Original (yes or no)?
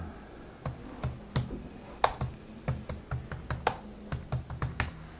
yes